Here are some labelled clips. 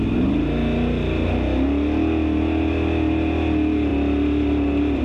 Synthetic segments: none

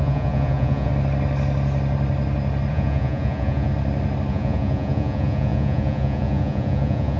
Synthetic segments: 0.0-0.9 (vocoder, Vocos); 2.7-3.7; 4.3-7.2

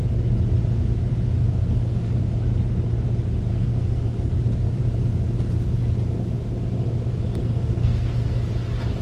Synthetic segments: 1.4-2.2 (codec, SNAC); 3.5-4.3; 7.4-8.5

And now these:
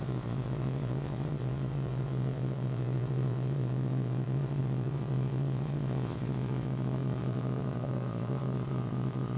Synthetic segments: 0.0-9.4 (vocoder, Vocos)

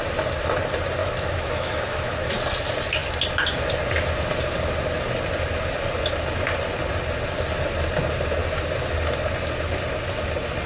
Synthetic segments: 1.0-2.3 (autoencoder, DAC-VAE)

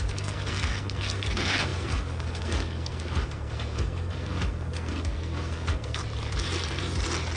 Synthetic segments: 0.0-6.0 (codec, SNAC)